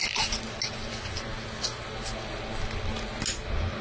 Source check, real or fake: real